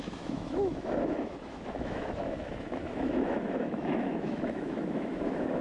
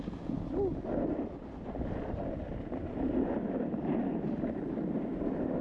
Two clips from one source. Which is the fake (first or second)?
first